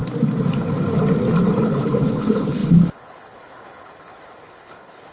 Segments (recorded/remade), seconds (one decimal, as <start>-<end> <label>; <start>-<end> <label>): 0.0-1.6 recorded; 1.6-5.1 remade